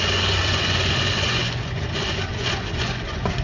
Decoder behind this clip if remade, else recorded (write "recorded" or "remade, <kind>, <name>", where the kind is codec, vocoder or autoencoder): remade, vocoder, Vocos